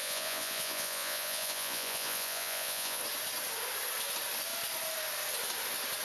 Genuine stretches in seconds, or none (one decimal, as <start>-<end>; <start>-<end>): 3.0-6.0